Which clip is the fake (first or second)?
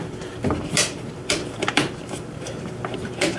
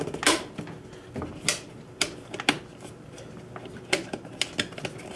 first